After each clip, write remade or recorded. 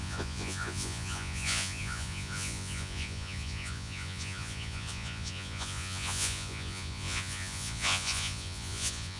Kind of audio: remade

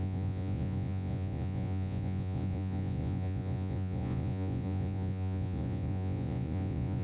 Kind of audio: remade